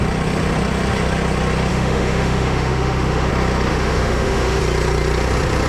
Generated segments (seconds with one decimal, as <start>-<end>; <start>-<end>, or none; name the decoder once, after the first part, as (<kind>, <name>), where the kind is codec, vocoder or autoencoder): 1.7-3.3 (autoencoder, DAC-VAE); 3.7-4.6